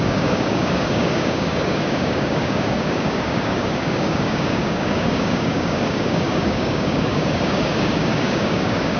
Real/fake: fake